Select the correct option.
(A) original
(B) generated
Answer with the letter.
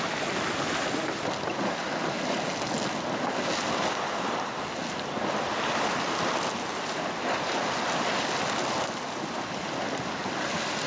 A